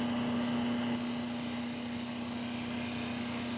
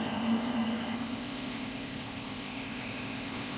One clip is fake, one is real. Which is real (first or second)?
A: first